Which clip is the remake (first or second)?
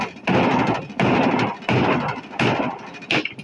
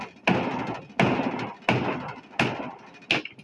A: first